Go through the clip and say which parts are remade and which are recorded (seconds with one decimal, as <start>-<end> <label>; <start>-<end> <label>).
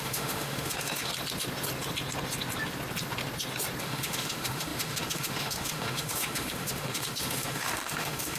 0.0-1.1 remade; 1.1-3.8 recorded; 3.8-8.4 remade